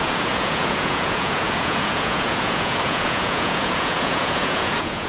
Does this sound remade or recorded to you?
remade